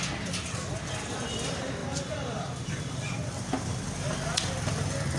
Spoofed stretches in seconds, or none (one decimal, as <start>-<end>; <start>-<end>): 1.8-3.4